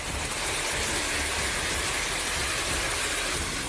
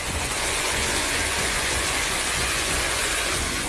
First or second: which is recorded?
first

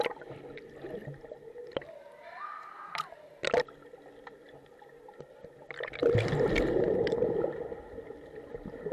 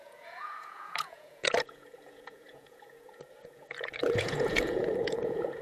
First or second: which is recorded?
first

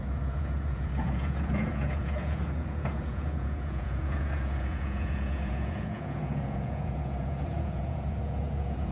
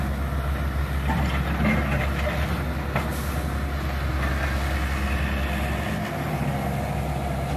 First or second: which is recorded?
second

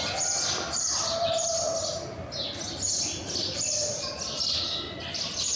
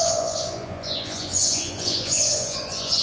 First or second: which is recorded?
first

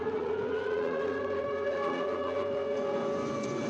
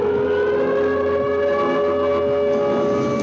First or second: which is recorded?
second